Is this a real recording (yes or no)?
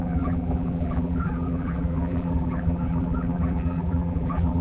no